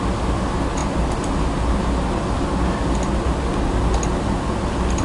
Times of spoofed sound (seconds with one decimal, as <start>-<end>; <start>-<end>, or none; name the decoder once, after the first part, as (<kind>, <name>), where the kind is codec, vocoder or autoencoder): none